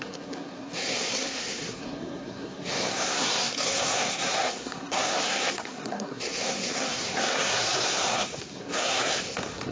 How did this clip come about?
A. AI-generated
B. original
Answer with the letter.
A